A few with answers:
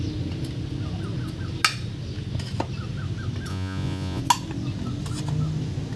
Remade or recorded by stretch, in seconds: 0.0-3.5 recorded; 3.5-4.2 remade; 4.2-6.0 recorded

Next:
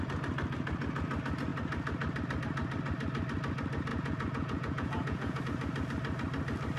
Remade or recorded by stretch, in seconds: 0.0-3.9 recorded; 3.9-5.4 remade; 5.4-6.8 recorded

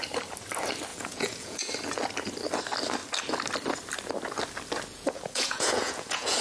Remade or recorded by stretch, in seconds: 0.0-0.9 recorded; 0.9-1.7 remade; 1.7-4.9 recorded; 4.9-6.4 remade

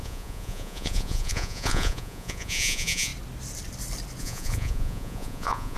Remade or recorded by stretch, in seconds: 0.0-3.1 remade; 3.1-4.2 recorded; 4.2-5.8 remade

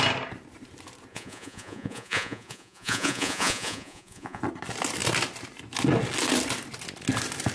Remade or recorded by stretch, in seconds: 0.0-1.1 recorded; 1.1-4.4 remade; 4.4-7.5 recorded

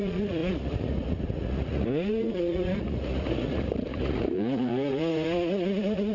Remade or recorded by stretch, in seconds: 0.0-6.1 remade

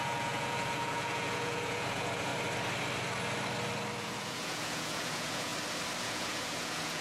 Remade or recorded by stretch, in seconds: 0.0-2.3 remade; 2.3-4.0 recorded; 4.0-5.5 remade; 5.5-6.0 recorded; 6.0-7.0 remade

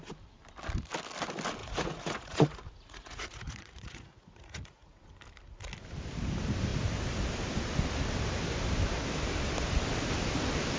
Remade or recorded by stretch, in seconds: 0.0-1.6 recorded; 1.6-5.1 remade; 5.1-10.8 recorded